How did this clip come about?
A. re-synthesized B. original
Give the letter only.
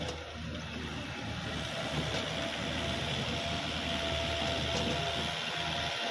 B